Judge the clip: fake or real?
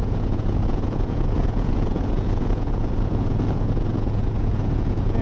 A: fake